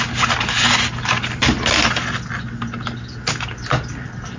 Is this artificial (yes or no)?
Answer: no